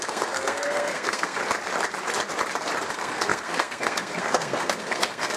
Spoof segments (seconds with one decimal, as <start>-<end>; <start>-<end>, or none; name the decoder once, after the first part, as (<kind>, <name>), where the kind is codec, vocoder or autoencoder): 0.0-1.4 (codec, SNAC); 2.9-5.4